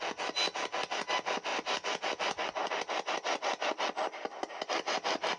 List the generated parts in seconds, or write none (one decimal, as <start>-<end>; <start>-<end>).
none